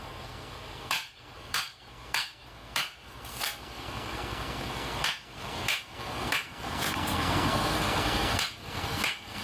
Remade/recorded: remade